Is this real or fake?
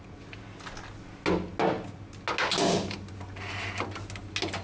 real